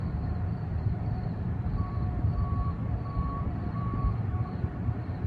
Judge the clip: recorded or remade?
remade